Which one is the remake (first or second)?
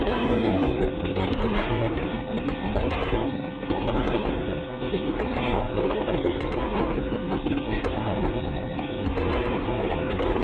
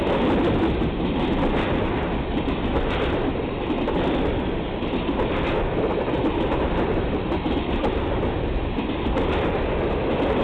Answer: first